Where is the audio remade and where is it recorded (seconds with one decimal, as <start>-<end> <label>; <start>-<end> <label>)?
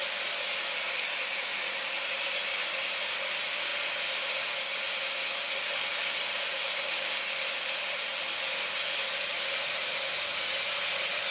0.0-11.3 recorded